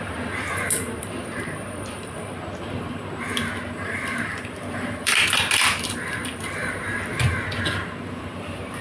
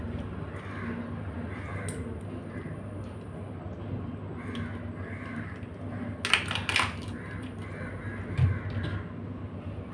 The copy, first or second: first